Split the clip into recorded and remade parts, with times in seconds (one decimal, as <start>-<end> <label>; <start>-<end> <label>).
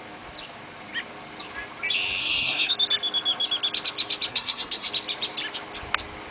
0.0-2.2 recorded; 2.2-2.7 remade; 2.7-4.3 recorded; 4.3-4.9 remade; 4.9-6.3 recorded